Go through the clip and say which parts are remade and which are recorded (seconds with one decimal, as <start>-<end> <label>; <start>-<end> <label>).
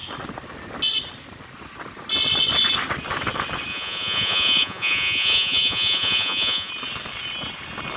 0.0-3.7 recorded; 3.7-6.7 remade; 6.7-8.0 recorded